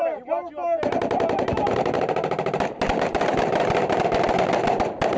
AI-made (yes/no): no